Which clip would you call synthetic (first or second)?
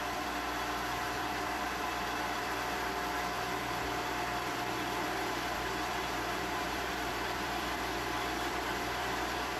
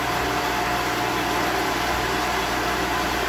first